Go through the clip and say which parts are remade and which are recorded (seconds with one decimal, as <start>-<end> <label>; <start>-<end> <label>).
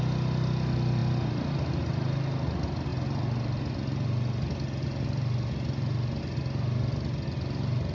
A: 0.0-7.9 recorded